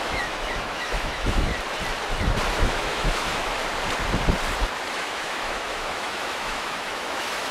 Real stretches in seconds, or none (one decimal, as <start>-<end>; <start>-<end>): 1.5-2.6; 3.6-4.9